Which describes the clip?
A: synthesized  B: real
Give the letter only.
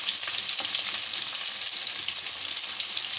A